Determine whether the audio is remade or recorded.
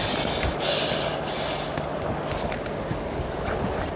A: recorded